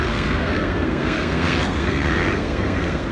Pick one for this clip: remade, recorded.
remade